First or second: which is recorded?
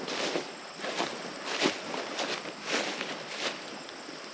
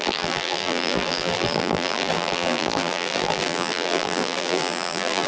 first